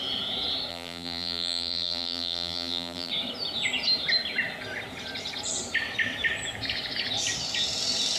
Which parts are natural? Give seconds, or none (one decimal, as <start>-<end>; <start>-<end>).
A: 0.0-0.7; 3.1-8.2